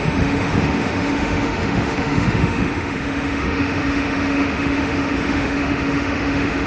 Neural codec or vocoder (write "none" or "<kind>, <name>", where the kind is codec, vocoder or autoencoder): autoencoder, DAC-VAE